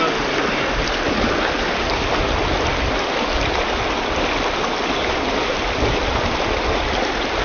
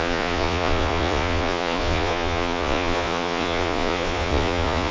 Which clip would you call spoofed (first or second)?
second